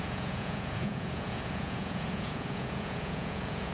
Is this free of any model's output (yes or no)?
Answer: no